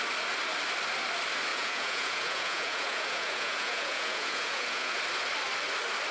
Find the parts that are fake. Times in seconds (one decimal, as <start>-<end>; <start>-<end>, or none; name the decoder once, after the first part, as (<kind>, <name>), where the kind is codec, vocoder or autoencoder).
1.5-5.0 (vocoder, Vocos)